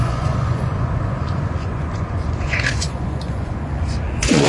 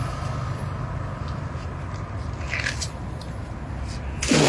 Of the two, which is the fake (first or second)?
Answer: first